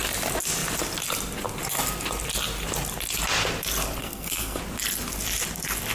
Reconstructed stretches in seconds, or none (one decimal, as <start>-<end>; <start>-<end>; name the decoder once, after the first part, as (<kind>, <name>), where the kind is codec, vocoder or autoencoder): 4.0-4.6 (codec, SNAC)